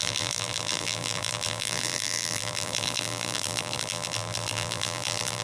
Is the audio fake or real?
fake